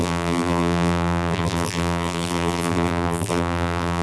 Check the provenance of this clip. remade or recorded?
remade